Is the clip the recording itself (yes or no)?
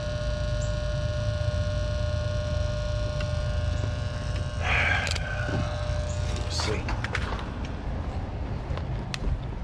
yes